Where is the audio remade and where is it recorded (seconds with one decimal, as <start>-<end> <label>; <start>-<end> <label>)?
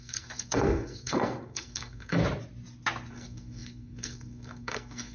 0.0-2.2 remade; 2.2-3.1 recorded; 3.1-5.1 remade